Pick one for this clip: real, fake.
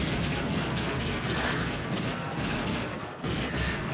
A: fake